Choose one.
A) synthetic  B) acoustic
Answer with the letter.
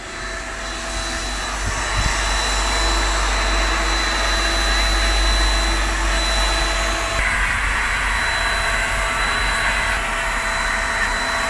B